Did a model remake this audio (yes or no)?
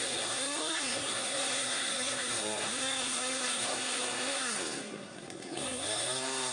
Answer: yes